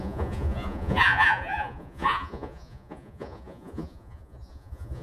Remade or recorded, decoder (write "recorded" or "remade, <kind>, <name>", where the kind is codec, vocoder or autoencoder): remade, vocoder, Vocos